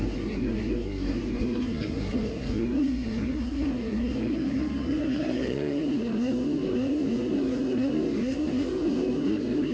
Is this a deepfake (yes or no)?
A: yes